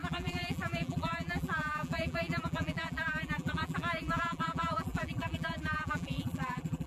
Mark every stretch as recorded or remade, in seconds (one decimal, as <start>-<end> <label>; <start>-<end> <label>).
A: 0.0-6.9 remade